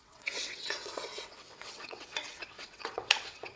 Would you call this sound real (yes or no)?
no